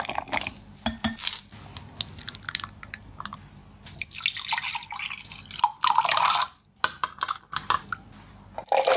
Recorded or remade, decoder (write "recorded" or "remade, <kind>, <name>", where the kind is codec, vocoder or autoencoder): recorded